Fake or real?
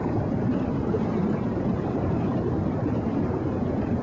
fake